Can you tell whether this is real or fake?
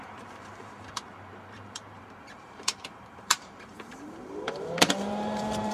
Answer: fake